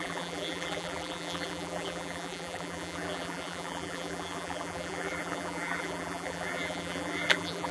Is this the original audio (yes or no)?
no